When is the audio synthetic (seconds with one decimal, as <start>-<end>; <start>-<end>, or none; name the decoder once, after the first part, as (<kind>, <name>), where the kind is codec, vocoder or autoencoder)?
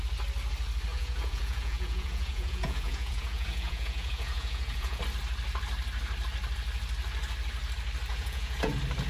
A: 0.9-5.0 (vocoder, Vocos); 8.1-8.7